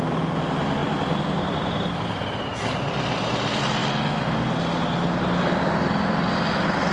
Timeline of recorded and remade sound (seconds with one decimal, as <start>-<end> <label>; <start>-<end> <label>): 0.0-6.9 recorded